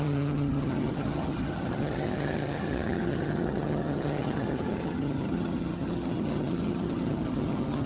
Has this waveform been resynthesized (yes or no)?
yes